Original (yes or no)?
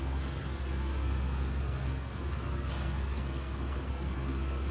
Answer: no